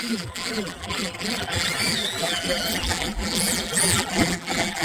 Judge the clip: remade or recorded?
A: remade